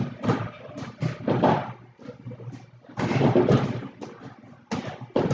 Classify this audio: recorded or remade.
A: recorded